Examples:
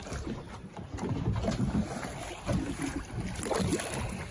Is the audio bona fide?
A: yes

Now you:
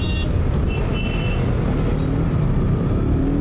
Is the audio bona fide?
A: yes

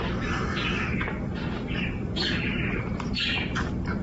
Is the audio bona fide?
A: yes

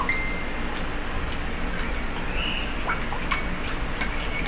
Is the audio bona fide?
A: yes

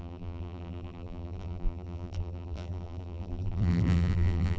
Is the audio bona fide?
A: no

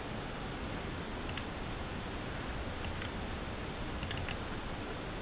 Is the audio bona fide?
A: yes